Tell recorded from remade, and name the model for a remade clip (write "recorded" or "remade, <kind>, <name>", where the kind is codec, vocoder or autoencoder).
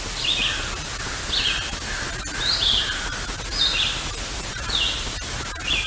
recorded